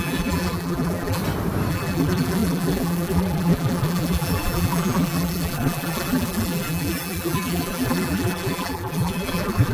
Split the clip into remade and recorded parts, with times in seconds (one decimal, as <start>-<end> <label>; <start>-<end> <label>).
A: 0.0-1.2 remade; 1.2-1.7 recorded; 1.7-9.7 remade